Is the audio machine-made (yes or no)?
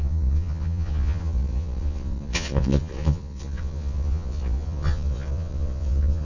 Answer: yes